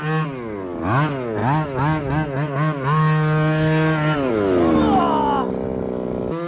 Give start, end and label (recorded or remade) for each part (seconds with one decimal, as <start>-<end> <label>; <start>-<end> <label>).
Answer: 0.0-6.5 recorded